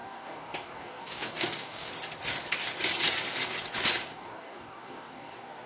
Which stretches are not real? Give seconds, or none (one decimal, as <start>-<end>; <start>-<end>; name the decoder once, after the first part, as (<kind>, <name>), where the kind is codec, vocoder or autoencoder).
0.0-1.9 (codec, DAC); 4.1-5.7